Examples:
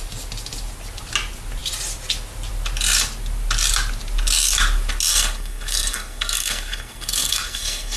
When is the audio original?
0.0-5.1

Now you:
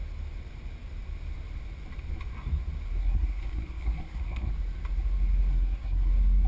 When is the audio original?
0.0-3.0; 4.5-5.5; 6.1-6.5

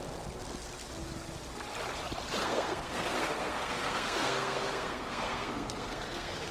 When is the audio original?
0.0-2.4

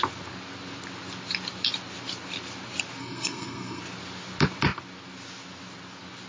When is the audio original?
0.0-3.0; 3.8-6.3

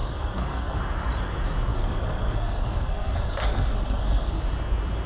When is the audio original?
0.8-1.7; 4.4-5.1